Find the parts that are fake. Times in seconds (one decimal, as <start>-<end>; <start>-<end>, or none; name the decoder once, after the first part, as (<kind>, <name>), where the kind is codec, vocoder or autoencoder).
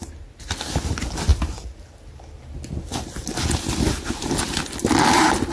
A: none